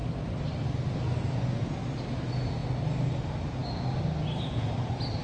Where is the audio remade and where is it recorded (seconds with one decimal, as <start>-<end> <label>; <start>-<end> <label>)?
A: 0.0-5.2 recorded

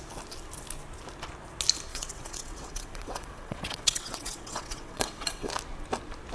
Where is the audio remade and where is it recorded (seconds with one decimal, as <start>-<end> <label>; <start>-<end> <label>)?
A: 0.0-1.9 recorded; 1.9-5.5 remade; 5.5-6.3 recorded

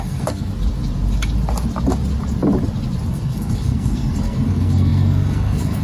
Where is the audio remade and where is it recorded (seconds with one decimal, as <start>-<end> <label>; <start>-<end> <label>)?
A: 0.0-0.5 remade; 0.5-3.1 recorded; 3.1-5.8 remade

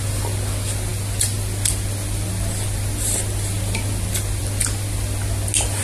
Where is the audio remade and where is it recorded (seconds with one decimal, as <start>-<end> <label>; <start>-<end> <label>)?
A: 0.0-5.8 recorded

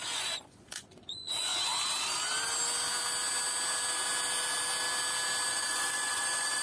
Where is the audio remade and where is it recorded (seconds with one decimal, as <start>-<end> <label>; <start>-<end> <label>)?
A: 0.0-1.5 remade; 1.5-5.5 recorded; 5.5-6.6 remade

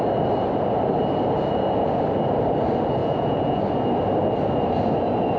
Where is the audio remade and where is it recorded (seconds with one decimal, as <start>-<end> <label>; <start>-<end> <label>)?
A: 0.0-3.0 recorded; 3.0-3.6 remade; 3.6-5.4 recorded

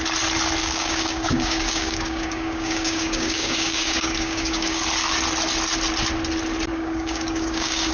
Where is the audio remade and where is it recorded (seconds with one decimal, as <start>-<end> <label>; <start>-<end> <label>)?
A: 0.0-0.6 recorded; 0.6-4.8 remade; 4.8-6.7 recorded; 6.7-7.9 remade